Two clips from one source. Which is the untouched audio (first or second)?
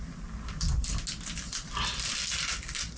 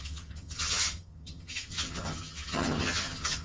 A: first